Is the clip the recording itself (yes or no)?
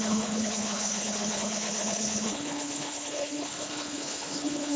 no